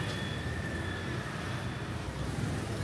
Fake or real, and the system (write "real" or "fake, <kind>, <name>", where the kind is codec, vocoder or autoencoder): real